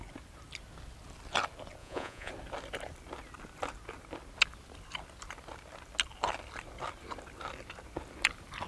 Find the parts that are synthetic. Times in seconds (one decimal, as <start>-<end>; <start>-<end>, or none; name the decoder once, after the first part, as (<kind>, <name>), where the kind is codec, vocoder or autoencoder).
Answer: 1.8-2.3 (vocoder, Vocos)